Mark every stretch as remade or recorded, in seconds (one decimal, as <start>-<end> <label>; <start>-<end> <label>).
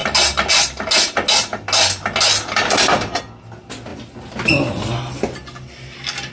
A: 0.0-6.3 recorded